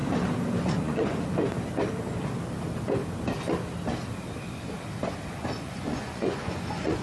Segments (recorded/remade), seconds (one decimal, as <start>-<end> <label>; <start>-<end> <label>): 0.0-0.6 recorded; 0.6-1.1 remade; 1.1-5.3 recorded; 5.3-7.0 remade